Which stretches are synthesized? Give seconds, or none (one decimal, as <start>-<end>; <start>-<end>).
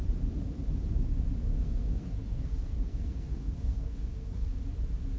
1.5-4.6